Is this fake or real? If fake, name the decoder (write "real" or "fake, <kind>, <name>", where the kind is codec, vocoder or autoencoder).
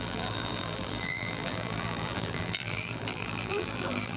fake, vocoder, BigVGAN v2